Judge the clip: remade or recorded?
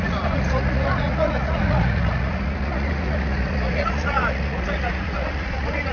remade